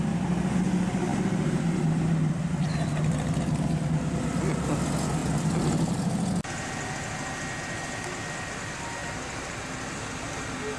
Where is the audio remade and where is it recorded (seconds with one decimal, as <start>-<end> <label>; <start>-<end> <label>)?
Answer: 0.0-10.8 recorded